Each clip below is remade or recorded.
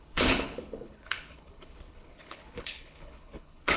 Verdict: remade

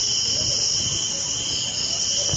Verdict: recorded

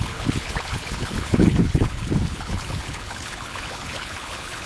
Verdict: remade